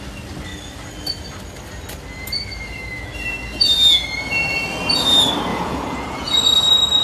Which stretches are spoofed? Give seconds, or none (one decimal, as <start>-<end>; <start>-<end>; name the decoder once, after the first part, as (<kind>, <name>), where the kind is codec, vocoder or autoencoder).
5.5-6.3 (vocoder, Vocos)